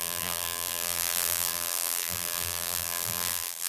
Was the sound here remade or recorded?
remade